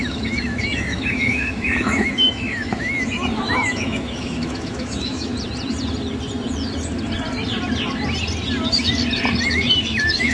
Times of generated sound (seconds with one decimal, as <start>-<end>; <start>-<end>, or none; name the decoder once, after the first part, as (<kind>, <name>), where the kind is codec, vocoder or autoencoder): 0.0-5.3 (autoencoder, DAC-VAE); 9.5-10.3